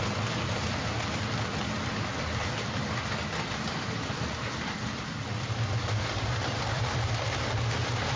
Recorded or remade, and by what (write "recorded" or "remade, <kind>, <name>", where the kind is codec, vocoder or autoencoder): remade, vocoder, BigVGAN v2